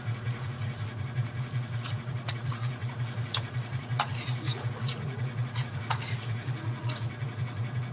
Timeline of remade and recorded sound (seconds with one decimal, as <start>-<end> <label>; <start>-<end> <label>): 0.0-7.9 remade